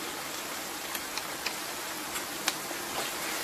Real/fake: real